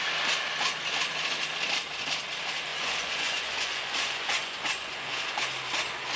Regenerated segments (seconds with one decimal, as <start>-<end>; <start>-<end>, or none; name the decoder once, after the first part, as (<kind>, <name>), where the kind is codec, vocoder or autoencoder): 2.7-5.2 (vocoder, Vocos)